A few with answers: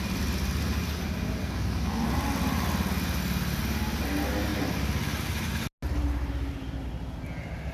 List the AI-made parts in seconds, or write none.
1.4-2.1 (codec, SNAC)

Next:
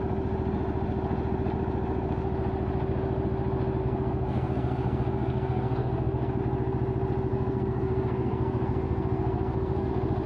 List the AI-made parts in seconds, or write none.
3.8-6.4 (codec, SNAC); 7.3-9.9

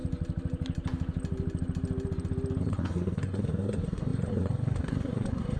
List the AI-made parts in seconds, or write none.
2.6-5.6 (codec, SNAC)

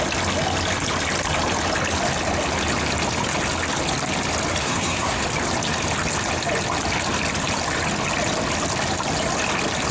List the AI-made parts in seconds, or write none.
4.6-5.2 (codec, SNAC)

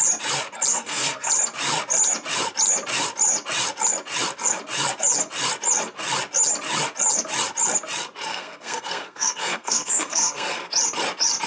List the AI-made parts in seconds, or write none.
0.7-1.3 (codec, SNAC); 8.3-10.7

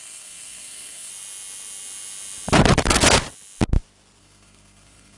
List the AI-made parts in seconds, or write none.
0.0-1.1 (codec, SNAC); 4.2-5.2